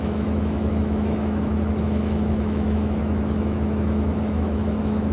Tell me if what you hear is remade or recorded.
remade